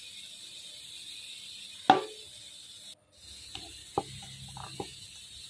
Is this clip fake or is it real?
real